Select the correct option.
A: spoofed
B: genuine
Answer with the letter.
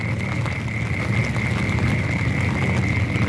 B